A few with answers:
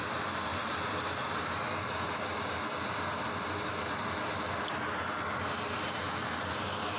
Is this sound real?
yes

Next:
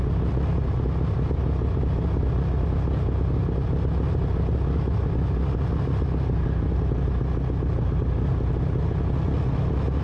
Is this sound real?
yes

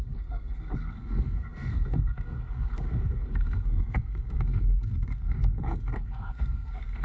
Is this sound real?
no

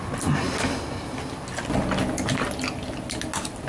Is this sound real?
yes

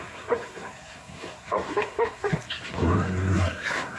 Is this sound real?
no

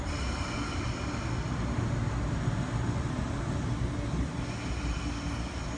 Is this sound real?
yes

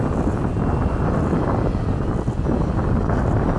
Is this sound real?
yes